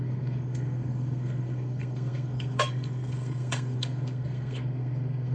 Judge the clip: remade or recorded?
remade